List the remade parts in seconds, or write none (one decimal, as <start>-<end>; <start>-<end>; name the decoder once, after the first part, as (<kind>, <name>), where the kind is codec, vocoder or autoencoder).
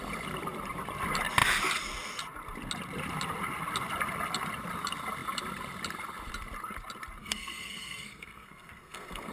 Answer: 7.2-9.3 (codec, SNAC)